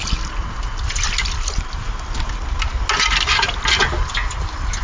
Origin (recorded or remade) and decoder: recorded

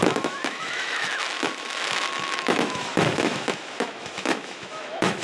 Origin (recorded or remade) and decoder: remade, autoencoder, DAC-VAE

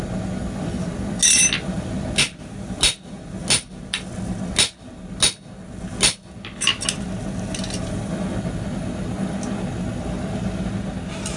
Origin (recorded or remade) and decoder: recorded